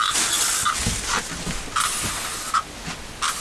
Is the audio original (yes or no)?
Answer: yes